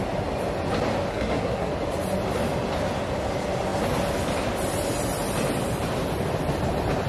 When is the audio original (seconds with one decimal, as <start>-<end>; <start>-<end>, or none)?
0.0-1.1; 1.7-7.1